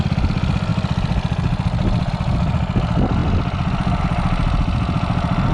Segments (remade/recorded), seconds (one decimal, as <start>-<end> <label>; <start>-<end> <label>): 0.0-5.5 recorded